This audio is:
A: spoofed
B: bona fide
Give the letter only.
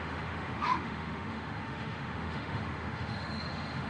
A